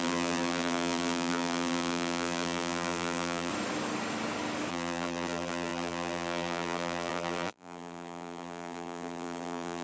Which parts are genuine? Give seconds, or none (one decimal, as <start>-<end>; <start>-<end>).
3.5-4.7

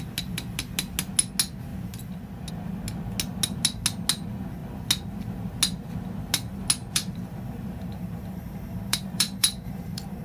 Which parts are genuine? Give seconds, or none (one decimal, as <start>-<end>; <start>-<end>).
0.0-6.8

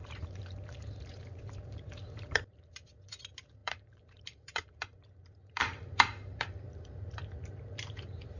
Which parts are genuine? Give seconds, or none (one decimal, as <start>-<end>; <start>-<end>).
2.7-3.6

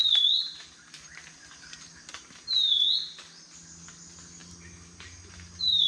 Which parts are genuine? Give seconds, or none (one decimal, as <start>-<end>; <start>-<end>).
2.9-4.4

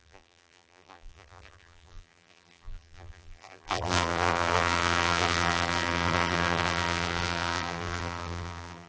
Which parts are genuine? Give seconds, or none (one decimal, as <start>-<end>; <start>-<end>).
none

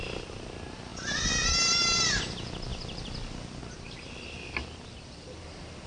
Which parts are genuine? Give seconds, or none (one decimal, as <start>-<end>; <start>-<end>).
0.0-2.7; 3.6-4.6; 5.4-5.9

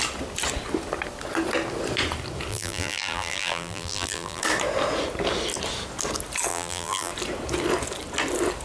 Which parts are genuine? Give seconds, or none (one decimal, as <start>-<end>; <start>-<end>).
0.0-2.5; 4.4-6.5; 7.1-8.6

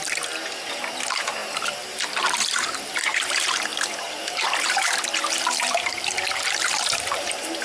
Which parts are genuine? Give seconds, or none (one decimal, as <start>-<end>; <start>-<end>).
0.0-0.7